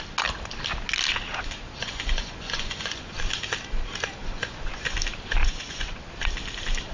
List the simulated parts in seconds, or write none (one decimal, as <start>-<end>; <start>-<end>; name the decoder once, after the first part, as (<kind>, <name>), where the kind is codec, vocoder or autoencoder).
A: 1.8-3.2 (vocoder, Vocos); 4.2-4.8; 5.4-6.0